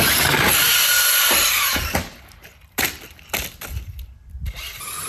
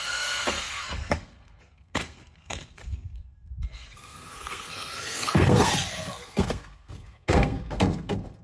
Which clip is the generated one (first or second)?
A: second